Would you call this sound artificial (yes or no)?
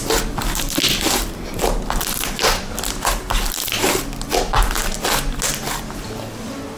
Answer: no